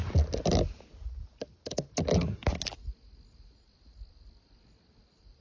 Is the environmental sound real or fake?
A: real